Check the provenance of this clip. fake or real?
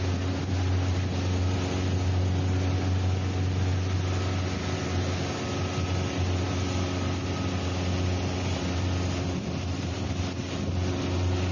real